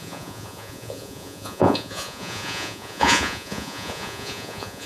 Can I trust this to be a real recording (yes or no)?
no